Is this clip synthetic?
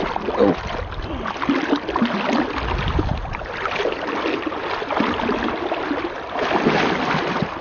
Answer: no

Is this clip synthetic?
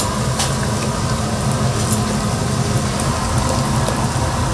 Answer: no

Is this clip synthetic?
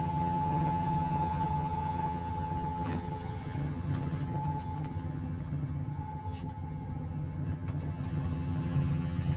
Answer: yes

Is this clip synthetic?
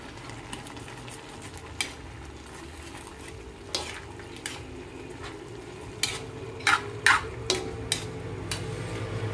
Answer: no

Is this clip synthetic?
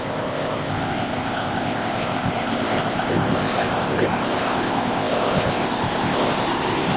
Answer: yes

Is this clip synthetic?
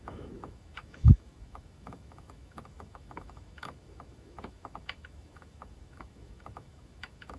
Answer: yes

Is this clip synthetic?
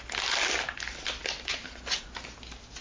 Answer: no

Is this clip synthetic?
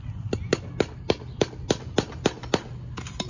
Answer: no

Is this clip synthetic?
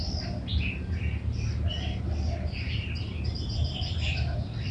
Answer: no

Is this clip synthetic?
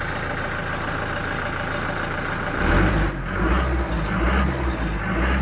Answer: no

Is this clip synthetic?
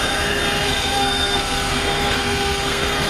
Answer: yes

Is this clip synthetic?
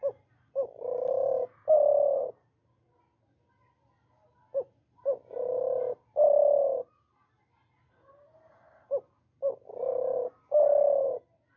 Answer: no